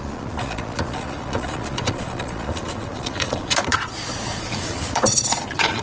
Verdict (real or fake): fake